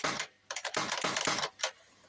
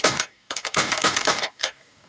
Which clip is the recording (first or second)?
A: first